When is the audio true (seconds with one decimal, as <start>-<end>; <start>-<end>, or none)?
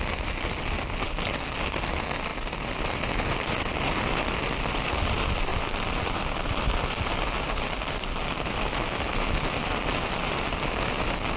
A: 0.0-11.4